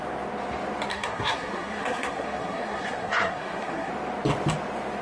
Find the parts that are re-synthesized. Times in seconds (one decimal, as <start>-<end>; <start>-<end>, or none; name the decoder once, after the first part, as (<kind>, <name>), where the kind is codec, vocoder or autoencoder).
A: 0.9-3.9 (codec, SNAC)